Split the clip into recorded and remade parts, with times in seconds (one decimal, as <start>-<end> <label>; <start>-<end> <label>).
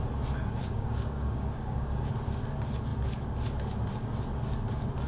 0.0-0.6 recorded; 0.6-2.1 remade; 2.1-5.1 recorded